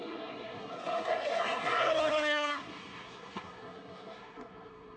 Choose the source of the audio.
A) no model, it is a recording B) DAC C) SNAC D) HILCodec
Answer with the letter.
C